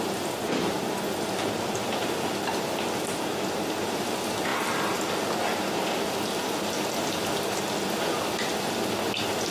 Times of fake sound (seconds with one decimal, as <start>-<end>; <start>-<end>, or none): none